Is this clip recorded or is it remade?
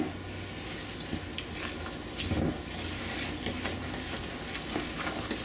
recorded